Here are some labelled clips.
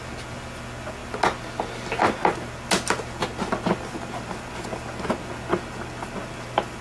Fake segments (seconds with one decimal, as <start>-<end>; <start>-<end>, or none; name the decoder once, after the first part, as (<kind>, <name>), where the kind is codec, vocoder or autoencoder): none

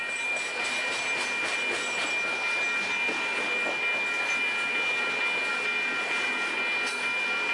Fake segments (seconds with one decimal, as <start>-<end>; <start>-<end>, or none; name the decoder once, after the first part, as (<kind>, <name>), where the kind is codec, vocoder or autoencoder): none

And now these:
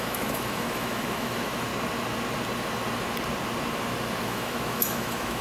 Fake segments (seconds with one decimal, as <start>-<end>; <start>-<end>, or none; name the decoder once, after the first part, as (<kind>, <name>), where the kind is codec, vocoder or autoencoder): 0.0-1.7 (autoencoder, DAC-VAE); 4.2-5.4

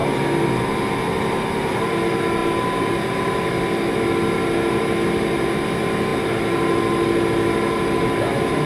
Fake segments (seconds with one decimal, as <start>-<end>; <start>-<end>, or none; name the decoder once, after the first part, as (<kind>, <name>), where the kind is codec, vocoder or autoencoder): none

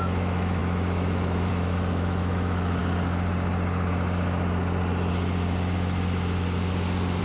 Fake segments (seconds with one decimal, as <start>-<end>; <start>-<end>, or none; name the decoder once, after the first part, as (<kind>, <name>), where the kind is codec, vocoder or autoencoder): 0.0-2.8 (autoencoder, DAC-VAE)

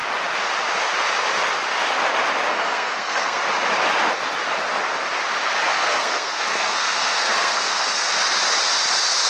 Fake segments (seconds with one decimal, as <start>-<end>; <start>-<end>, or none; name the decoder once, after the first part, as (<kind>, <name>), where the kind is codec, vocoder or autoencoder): 2.5-3.4 (codec, SNAC); 5.7-8.1

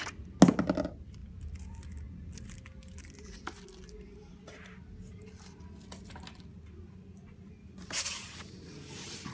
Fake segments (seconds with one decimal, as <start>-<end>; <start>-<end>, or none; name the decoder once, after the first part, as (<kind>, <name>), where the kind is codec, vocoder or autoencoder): none

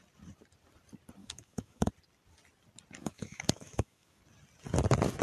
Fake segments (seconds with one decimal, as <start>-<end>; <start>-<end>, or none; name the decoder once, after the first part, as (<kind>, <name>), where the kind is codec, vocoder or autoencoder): 1.2-1.9 (autoencoder, DAC-VAE); 3.0-4.2